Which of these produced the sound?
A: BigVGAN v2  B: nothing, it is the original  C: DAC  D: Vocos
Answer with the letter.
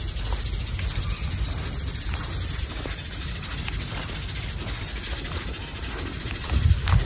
B